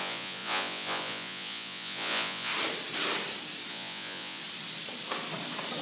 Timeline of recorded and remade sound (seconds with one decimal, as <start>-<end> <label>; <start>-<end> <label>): 0.0-2.5 remade; 2.5-3.7 recorded; 3.7-4.4 remade; 4.4-5.8 recorded

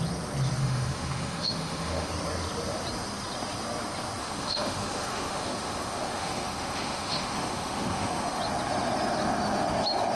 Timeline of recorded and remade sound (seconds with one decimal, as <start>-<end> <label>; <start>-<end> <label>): 0.0-0.6 recorded; 0.6-2.1 remade; 2.1-4.2 recorded; 4.2-8.4 remade; 8.4-10.1 recorded

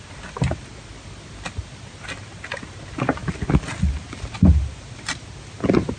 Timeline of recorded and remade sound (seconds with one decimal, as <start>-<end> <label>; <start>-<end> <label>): 0.0-6.0 recorded

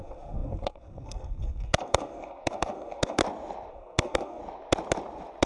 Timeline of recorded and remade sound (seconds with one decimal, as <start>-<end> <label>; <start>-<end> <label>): 0.0-3.2 remade; 3.2-3.7 recorded; 3.7-4.4 remade; 4.4-5.5 recorded

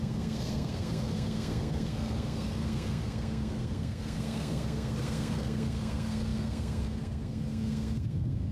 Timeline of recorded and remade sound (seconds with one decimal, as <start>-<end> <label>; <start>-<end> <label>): 0.0-8.5 remade